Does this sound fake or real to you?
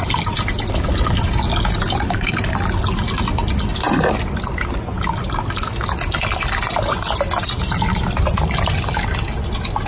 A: real